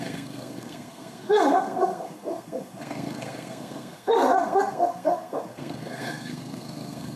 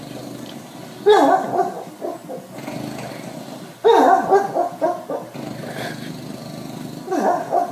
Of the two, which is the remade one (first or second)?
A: first